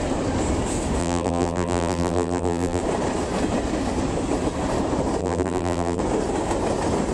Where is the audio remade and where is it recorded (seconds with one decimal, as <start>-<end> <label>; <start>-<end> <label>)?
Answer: 0.0-1.0 recorded; 1.0-2.8 remade; 2.8-5.2 recorded; 5.2-6.0 remade; 6.0-7.1 recorded